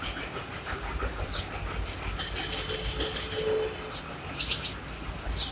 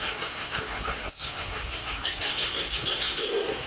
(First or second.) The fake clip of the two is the second